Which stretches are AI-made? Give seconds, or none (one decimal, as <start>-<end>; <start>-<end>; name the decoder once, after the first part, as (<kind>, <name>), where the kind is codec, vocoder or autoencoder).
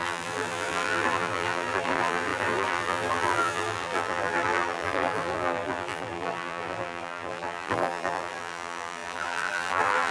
0.0-10.1 (vocoder, BigVGAN v2)